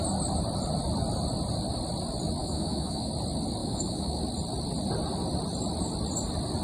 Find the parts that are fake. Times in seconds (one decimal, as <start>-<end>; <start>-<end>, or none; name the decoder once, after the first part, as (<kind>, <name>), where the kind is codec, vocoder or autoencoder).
2.4-3.1 (autoencoder, DAC-VAE); 3.6-4.2